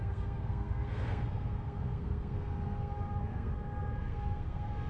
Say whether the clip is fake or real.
fake